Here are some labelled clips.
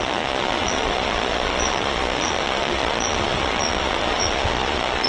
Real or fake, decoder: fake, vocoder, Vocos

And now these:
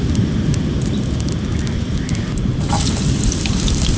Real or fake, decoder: real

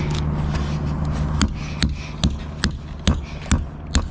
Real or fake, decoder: real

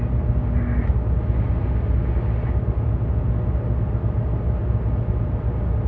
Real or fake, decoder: real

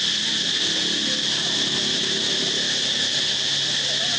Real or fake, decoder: real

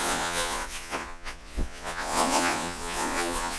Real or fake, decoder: fake, vocoder, Vocos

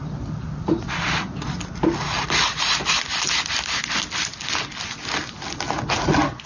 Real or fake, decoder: real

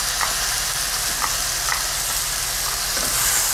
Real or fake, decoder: real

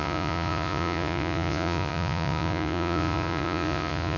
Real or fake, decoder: fake, vocoder, Vocos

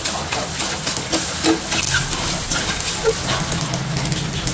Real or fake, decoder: real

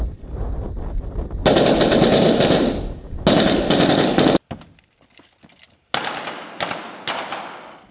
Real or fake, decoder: real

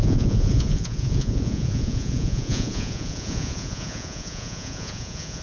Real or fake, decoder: fake, vocoder, Vocos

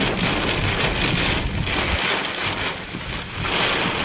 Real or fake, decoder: real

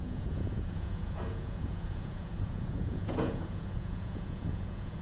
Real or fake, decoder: fake, vocoder, Vocos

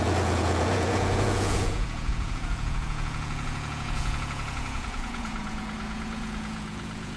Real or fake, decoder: fake, vocoder, Vocos